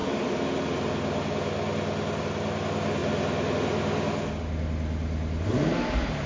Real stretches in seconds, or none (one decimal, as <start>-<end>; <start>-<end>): 0.0-6.3